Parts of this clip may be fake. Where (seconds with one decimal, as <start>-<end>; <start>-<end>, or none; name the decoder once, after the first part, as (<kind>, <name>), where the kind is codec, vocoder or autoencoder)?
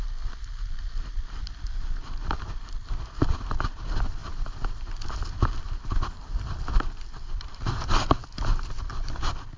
0.0-7.5 (vocoder, BigVGAN v2); 8.9-9.6